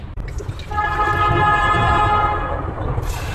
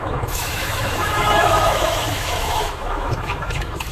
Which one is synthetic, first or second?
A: second